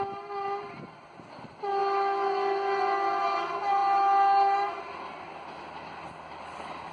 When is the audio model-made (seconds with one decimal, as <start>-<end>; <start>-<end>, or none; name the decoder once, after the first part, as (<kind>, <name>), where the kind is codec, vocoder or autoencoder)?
none